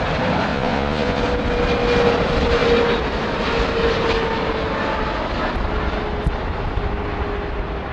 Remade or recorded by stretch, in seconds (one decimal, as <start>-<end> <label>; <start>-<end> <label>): 0.0-0.5 recorded; 0.5-1.2 remade; 1.2-7.9 recorded